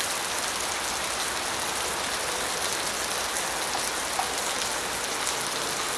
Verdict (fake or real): real